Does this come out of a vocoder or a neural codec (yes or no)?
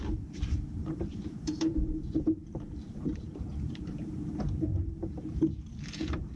yes